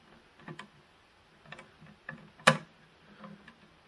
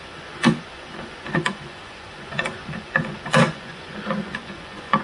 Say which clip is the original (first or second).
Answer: first